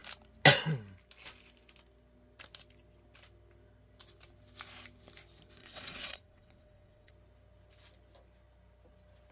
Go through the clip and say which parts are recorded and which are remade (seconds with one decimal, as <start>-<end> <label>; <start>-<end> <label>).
0.0-5.6 recorded; 5.6-7.1 remade; 7.1-9.3 recorded